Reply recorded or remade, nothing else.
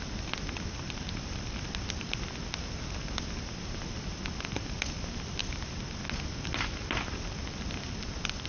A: recorded